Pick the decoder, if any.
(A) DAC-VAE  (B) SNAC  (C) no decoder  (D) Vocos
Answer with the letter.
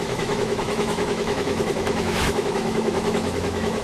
A